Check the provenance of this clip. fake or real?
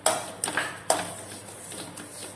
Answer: real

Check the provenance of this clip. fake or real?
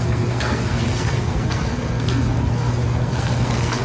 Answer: fake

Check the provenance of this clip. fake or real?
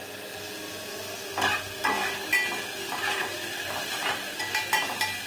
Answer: real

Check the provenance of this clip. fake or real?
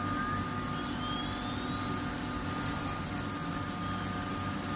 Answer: real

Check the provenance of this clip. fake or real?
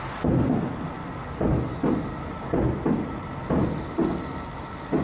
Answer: real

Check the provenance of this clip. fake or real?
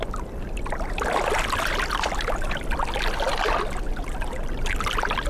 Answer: real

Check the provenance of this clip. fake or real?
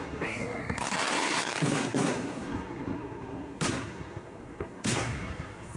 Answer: fake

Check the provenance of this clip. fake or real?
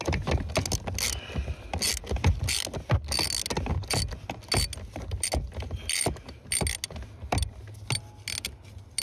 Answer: real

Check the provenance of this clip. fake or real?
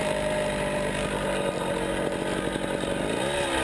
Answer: real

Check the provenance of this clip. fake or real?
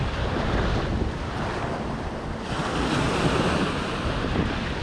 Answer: real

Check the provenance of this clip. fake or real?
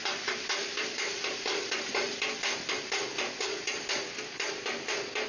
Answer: real